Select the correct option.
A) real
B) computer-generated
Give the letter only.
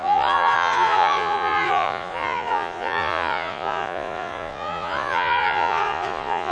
B